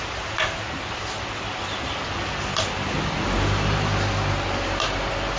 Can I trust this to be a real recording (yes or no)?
yes